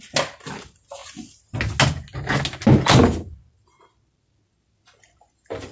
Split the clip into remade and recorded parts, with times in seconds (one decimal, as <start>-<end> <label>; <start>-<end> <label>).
0.0-5.7 recorded